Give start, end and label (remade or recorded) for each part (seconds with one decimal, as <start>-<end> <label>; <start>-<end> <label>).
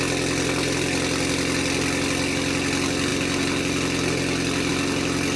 0.0-5.4 recorded